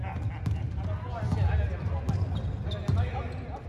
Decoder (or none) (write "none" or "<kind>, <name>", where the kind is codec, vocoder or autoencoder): none